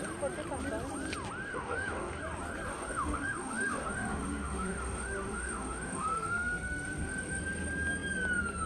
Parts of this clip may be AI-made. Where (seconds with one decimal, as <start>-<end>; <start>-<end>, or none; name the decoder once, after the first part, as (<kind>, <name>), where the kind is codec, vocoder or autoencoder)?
1.5-2.2 (autoencoder, DAC-VAE); 2.7-7.4